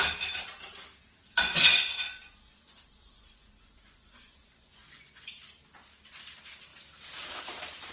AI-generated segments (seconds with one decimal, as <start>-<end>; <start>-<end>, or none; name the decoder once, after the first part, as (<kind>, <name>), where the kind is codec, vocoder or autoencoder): 1.2-5.3 (vocoder, Vocos)